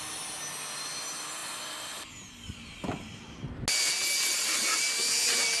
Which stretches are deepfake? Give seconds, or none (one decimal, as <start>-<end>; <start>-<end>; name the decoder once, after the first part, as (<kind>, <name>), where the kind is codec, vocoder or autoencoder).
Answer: none